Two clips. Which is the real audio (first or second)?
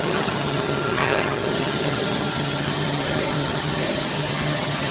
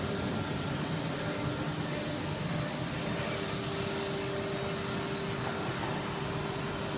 second